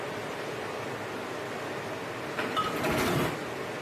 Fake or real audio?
real